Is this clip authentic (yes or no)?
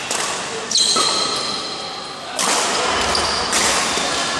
yes